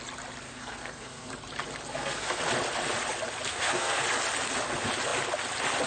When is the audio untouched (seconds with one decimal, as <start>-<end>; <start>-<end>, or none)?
0.0-0.5; 1.3-1.9; 2.4-3.5; 4.0-5.9